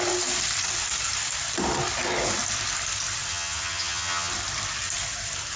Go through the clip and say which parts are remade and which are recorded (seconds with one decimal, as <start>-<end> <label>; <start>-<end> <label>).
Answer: 0.0-3.3 recorded; 3.3-4.3 remade; 4.3-5.6 recorded